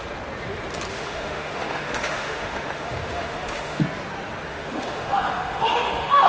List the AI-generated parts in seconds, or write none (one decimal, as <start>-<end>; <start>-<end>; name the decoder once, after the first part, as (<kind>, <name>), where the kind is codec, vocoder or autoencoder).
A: 0.9-3.8 (autoencoder, DAC-VAE); 4.5-6.3